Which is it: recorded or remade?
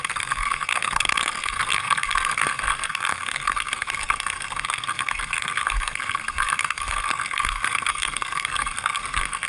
remade